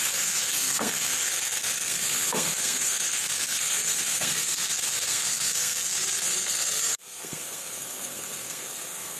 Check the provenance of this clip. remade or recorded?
remade